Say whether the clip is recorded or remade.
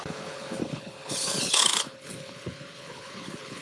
remade